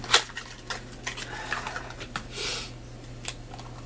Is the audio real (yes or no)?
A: yes